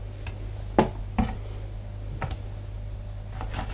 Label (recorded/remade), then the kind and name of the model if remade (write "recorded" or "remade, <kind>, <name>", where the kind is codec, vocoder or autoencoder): recorded